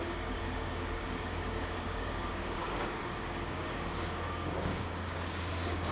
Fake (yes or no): yes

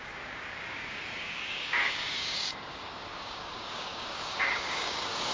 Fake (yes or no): yes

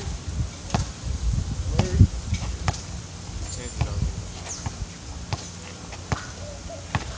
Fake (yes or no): no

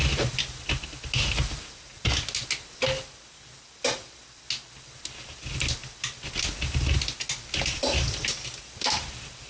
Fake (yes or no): no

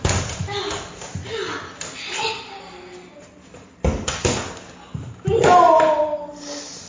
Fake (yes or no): no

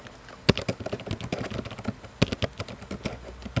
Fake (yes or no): no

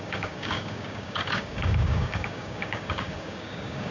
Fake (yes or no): yes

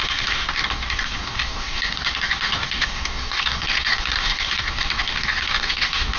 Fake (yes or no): yes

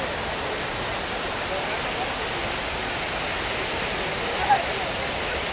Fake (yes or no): no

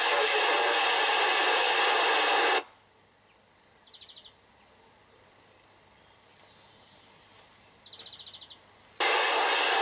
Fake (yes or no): no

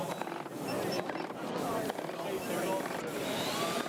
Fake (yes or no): no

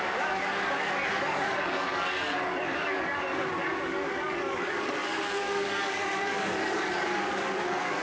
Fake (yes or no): yes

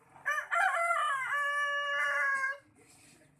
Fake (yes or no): no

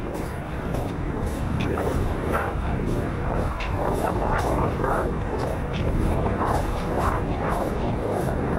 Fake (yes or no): yes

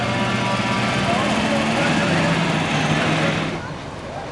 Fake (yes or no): no